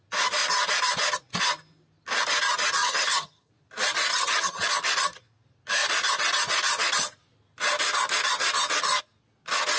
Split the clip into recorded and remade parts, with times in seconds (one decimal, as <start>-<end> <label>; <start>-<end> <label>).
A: 0.0-2.8 recorded; 2.8-3.5 remade; 3.5-4.1 recorded; 4.1-4.7 remade; 4.7-9.8 recorded